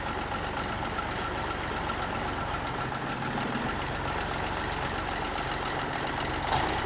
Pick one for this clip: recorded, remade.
recorded